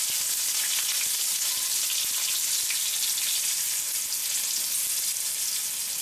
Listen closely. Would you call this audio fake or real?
real